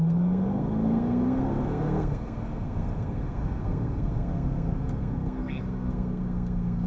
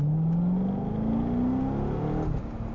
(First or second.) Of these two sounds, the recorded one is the second